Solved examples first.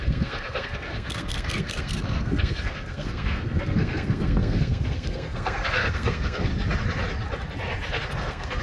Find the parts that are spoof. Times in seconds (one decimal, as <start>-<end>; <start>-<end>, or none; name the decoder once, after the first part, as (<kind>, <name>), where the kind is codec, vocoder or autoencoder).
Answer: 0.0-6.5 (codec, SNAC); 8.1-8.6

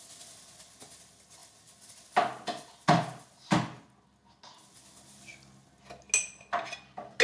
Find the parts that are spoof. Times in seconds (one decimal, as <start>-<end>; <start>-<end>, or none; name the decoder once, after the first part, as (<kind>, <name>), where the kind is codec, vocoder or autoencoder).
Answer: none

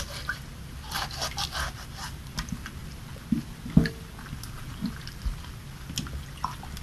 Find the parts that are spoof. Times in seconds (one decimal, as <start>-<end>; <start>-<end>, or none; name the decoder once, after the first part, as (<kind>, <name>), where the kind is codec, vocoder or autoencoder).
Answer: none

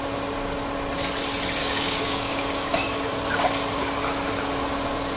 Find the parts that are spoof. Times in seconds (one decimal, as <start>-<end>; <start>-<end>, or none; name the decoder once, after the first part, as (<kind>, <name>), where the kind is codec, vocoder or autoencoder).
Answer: 1.6-3.1 (codec, DAC)